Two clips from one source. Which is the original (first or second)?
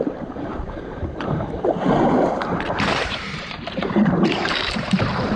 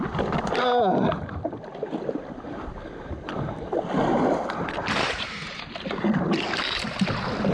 second